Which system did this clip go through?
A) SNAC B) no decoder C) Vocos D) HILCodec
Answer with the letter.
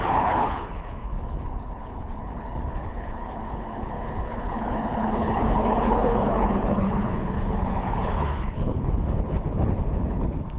D